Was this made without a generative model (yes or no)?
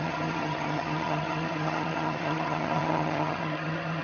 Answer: no